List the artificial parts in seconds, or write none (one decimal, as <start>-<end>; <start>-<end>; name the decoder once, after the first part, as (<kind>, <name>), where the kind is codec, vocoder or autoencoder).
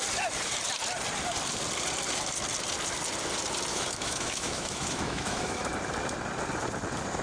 3.7-5.7 (autoencoder, DAC-VAE)